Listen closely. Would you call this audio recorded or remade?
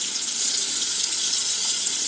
remade